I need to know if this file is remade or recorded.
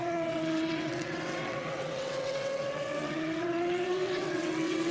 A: remade